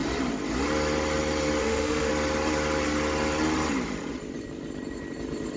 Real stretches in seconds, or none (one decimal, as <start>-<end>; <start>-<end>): 0.0-1.6; 2.1-5.6